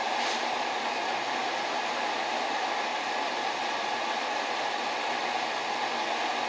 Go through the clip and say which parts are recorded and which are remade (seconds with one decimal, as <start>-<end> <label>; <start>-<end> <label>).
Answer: 0.0-6.5 recorded